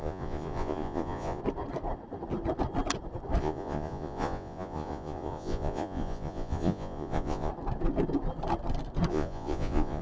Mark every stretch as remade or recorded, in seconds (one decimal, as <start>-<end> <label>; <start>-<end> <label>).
0.0-1.4 remade; 1.4-3.4 recorded; 3.4-7.5 remade; 7.5-9.1 recorded; 9.1-10.0 remade